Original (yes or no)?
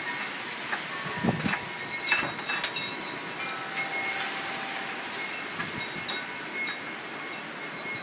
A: yes